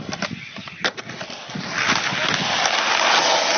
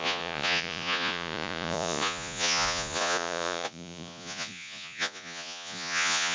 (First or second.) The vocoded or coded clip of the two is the second